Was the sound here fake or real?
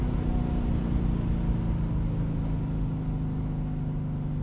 real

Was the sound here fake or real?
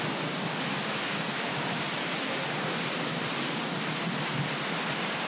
real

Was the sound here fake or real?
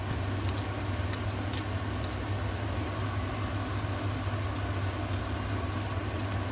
real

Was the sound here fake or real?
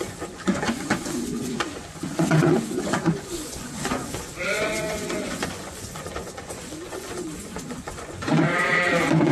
fake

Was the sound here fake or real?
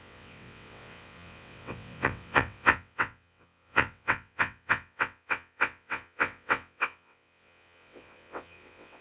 fake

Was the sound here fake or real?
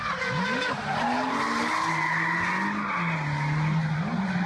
real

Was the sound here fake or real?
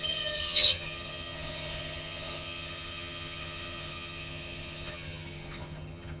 fake